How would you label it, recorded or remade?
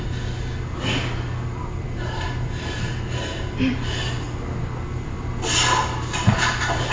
recorded